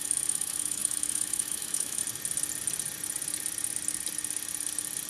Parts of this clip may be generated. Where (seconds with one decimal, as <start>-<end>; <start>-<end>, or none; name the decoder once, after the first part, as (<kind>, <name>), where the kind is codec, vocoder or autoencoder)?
0.0-2.0 (autoencoder, DAC-VAE)